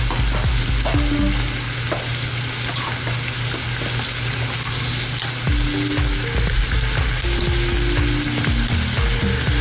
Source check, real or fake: real